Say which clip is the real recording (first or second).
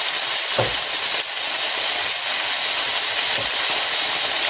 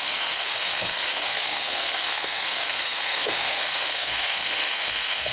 first